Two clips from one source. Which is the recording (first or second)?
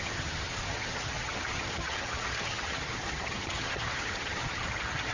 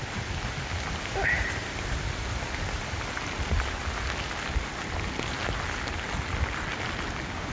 second